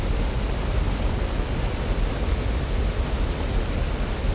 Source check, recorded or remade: recorded